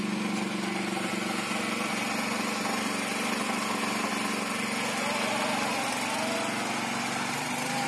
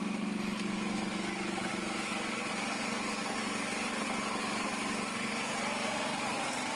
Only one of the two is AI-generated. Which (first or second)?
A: second